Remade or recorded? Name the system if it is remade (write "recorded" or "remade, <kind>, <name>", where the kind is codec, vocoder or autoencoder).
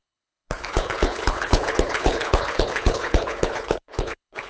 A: remade, codec, HILCodec